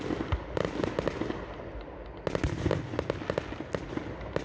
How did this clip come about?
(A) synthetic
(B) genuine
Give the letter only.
B